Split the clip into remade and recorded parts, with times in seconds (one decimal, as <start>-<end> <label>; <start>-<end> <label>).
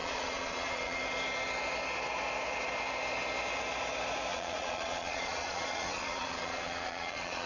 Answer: 0.0-1.0 remade; 1.0-4.3 recorded; 4.3-7.5 remade